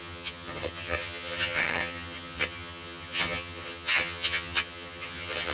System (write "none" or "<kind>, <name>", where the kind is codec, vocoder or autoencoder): vocoder, HiFi-GAN